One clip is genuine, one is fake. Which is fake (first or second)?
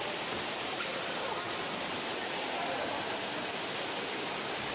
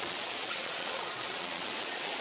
second